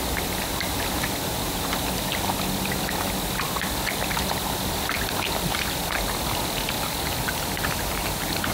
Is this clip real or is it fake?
real